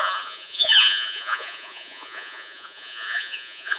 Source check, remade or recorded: remade